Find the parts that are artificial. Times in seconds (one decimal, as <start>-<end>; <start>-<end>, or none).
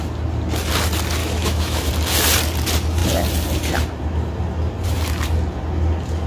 1.2-1.9